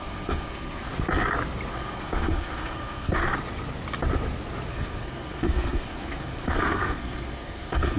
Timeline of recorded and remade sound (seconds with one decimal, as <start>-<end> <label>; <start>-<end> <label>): 0.0-0.9 remade; 0.9-1.7 recorded; 1.7-3.2 remade; 3.2-4.7 recorded; 4.7-8.0 remade